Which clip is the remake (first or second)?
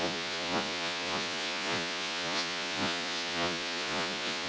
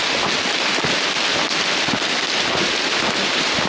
first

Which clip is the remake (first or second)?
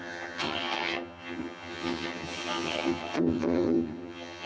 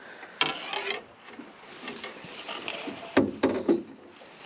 first